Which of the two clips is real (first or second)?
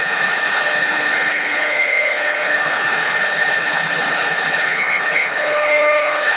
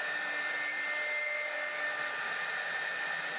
second